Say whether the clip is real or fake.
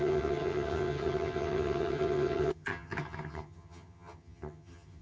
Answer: fake